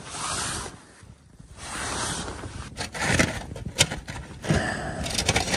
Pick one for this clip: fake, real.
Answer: fake